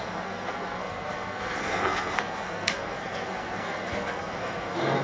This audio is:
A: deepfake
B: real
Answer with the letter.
A